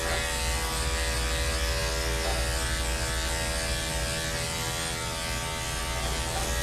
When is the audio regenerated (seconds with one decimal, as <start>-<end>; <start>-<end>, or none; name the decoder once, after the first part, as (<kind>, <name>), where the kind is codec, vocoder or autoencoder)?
none